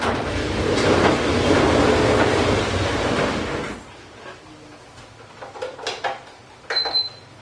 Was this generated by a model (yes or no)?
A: no